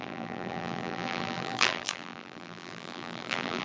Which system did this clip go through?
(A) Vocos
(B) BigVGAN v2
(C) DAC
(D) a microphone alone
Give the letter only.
B